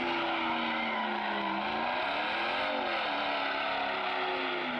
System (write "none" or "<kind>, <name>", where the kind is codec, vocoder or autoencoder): none